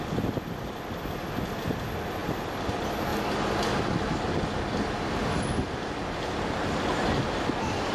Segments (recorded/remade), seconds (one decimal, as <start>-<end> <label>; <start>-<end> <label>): 0.0-7.9 recorded